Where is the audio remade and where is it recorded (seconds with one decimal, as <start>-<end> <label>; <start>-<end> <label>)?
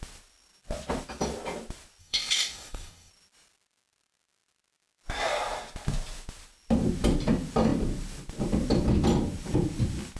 0.0-2.0 recorded; 2.0-3.1 remade; 3.1-10.2 recorded